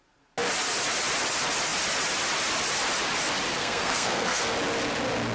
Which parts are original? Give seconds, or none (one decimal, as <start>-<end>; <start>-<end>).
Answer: 0.0-3.6; 4.4-5.3